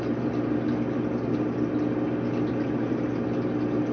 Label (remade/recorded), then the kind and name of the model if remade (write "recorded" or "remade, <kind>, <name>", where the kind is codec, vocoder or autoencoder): recorded